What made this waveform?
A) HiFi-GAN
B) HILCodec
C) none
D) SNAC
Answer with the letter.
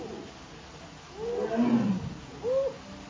C